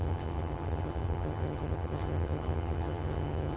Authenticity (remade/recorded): remade